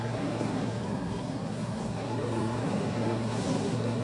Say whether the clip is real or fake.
fake